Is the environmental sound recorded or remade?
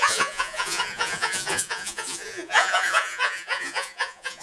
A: remade